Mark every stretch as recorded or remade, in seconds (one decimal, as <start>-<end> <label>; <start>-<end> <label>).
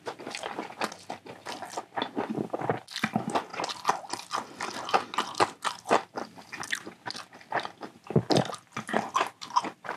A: 0.0-10.0 recorded